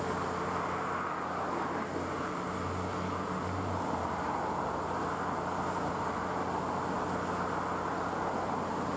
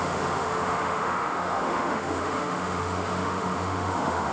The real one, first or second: first